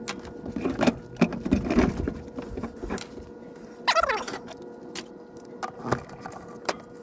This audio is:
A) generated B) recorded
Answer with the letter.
B